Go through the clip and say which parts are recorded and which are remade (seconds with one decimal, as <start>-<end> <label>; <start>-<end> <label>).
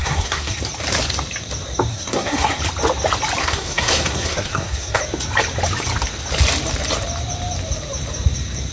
0.0-0.6 remade; 0.6-1.9 recorded; 1.9-2.6 remade; 2.6-3.4 recorded; 3.4-5.0 remade; 5.0-8.7 recorded